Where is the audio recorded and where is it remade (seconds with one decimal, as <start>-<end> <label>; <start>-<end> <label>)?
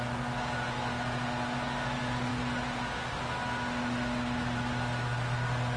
0.0-5.8 recorded